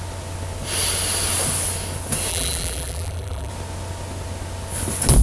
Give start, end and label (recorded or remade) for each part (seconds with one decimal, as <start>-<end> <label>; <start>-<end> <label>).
0.0-2.3 recorded; 2.3-3.5 remade; 3.5-5.2 recorded